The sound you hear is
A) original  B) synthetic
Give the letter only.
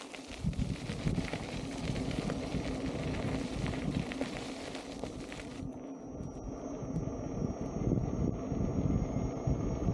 A